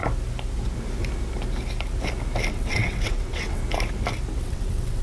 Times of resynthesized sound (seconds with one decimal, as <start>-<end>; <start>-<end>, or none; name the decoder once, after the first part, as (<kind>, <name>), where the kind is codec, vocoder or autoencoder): 2.5-3.6 (vocoder, WaveNeXt); 4.4-5.0